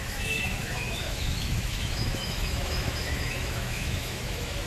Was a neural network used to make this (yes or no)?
yes